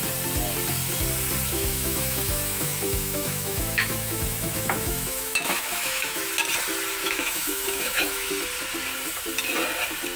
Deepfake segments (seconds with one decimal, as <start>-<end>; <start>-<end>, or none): 1.5-6.2; 7.0-8.3